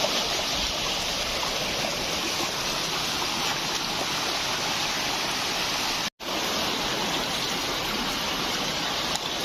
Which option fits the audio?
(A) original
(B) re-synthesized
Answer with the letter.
A